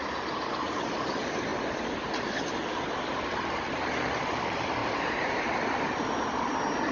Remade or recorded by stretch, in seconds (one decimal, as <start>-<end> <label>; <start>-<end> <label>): 0.0-4.8 recorded; 4.8-5.4 remade; 5.4-6.9 recorded